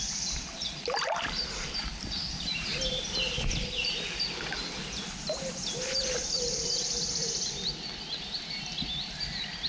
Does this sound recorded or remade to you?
remade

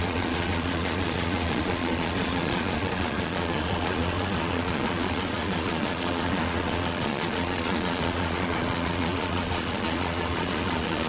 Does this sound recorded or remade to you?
remade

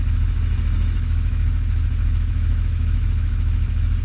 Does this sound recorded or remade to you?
remade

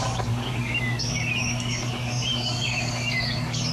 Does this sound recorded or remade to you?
remade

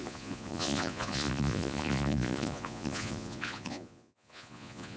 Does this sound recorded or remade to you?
remade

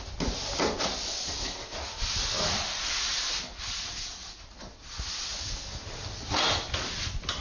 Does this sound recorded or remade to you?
recorded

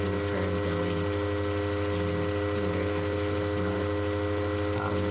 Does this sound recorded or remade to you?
recorded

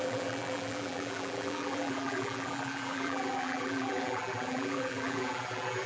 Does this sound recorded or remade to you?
remade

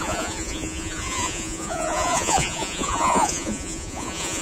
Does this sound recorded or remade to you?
remade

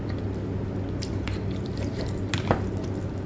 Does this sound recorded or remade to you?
recorded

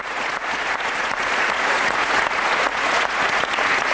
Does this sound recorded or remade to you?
remade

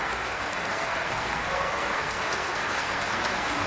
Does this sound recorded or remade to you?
remade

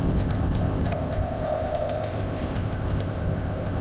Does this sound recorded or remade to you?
remade